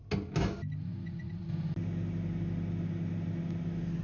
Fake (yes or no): no